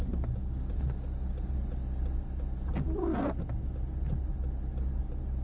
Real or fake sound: real